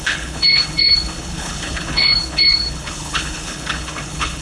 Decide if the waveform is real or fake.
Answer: fake